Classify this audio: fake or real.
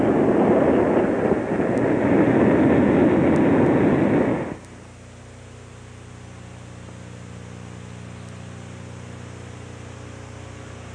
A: real